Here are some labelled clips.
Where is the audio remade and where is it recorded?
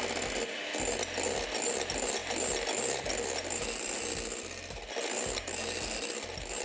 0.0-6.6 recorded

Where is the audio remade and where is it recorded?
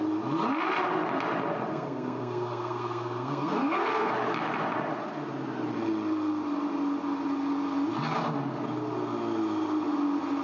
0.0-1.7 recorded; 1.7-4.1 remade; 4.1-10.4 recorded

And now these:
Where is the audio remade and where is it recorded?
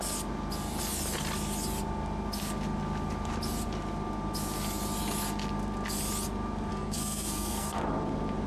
0.0-6.7 recorded; 6.7-7.8 remade; 7.8-8.5 recorded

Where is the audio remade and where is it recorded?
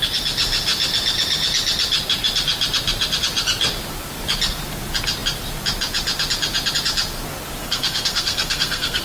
0.0-7.6 recorded; 7.6-9.0 remade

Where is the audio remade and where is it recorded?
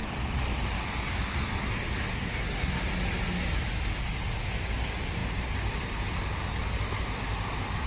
0.0-2.1 recorded; 2.1-2.8 remade; 2.8-7.9 recorded